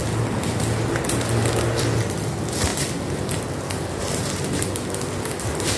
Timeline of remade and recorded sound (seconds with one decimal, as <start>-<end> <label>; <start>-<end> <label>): 0.0-5.8 recorded